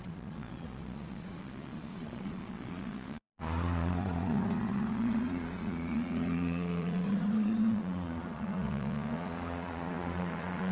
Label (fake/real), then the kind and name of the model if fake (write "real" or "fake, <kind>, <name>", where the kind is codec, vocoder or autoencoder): fake, vocoder, Vocos